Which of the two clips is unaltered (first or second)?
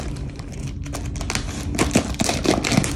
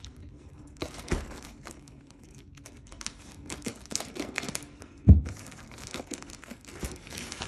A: first